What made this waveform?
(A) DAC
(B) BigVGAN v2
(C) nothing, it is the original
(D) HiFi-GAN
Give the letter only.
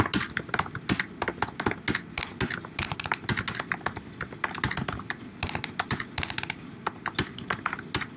C